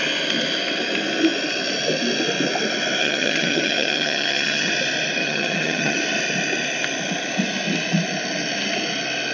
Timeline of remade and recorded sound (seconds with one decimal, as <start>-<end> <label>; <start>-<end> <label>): 0.0-3.0 recorded; 3.0-4.7 remade; 4.7-5.2 recorded; 5.2-6.0 remade; 6.0-9.3 recorded